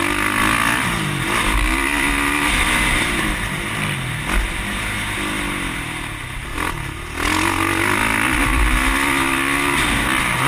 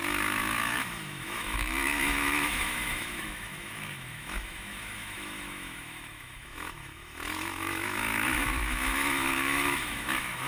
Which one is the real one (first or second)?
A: first